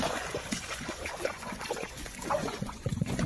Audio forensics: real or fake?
fake